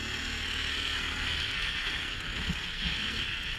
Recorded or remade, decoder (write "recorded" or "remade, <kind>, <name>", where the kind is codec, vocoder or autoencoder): remade, codec, SNAC